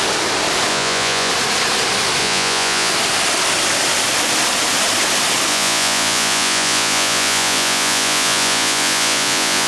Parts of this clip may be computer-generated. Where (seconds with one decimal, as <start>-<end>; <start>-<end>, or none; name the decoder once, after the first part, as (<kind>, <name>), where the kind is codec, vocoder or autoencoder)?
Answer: 0.7-1.3 (vocoder, Vocos); 2.2-2.9; 5.5-9.7